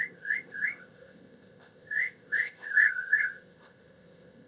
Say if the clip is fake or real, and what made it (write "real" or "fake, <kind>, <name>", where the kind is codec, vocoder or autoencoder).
fake, codec, ZipCodec